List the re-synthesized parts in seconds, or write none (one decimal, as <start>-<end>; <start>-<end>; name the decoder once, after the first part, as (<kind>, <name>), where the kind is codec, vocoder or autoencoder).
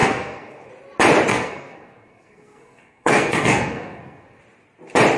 0.0-0.7 (codec, SNAC); 1.3-4.4